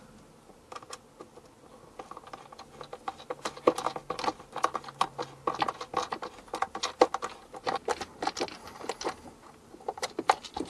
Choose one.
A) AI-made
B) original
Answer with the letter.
B